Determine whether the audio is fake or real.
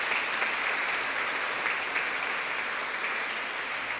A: real